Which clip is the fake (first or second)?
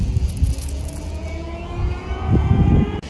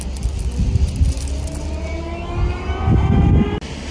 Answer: first